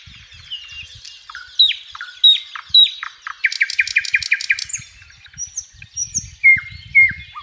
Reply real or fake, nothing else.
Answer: real